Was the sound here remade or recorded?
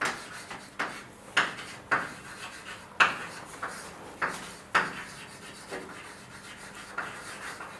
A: recorded